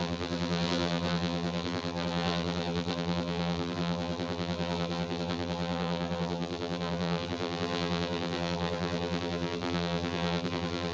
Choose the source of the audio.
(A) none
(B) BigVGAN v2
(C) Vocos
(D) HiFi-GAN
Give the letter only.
B